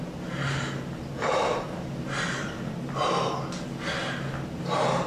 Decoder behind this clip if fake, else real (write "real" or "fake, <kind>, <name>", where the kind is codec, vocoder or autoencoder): real